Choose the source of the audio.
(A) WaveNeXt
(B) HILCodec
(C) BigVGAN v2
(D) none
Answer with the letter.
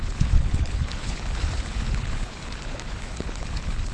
B